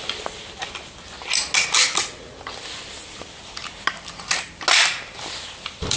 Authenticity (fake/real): real